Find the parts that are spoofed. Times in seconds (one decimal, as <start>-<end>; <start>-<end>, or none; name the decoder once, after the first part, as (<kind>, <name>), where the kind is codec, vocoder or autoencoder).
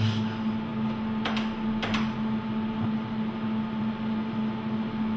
none